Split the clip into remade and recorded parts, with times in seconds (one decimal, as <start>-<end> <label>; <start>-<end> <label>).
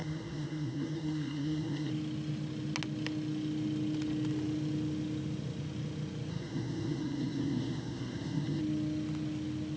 0.0-1.9 remade; 1.9-6.3 recorded; 6.3-8.6 remade; 8.6-9.8 recorded